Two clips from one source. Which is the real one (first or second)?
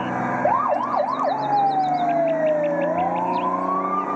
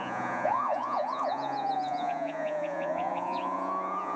first